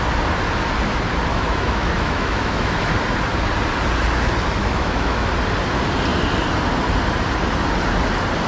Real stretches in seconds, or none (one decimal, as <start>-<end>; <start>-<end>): 0.0-1.3; 2.9-4.6; 5.3-8.5